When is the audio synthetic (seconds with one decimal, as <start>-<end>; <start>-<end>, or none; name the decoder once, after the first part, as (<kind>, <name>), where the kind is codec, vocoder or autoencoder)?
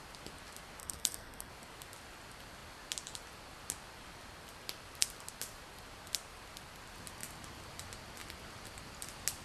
0.8-1.5 (codec, SNAC)